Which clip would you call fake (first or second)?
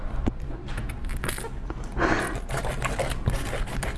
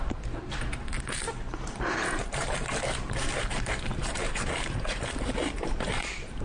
second